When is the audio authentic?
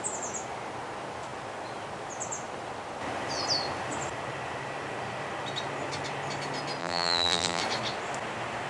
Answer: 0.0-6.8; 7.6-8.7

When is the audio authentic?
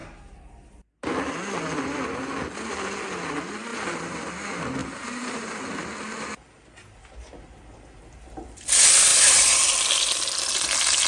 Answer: 0.0-3.7; 4.3-4.8; 5.6-9.1; 9.7-11.1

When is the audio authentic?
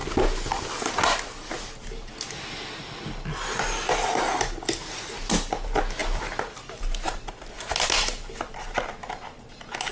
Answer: 0.0-9.9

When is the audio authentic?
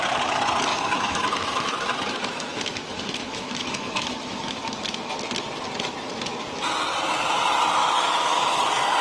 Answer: 0.0-0.7; 4.6-7.8; 8.6-9.0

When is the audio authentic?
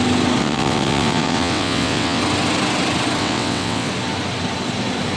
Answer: 0.0-0.4; 2.2-3.2; 3.9-5.2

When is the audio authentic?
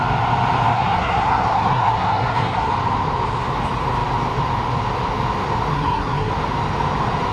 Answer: 0.0-0.7; 2.7-5.7; 6.3-7.3